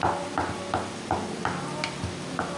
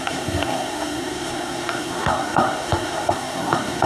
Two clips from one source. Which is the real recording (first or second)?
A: first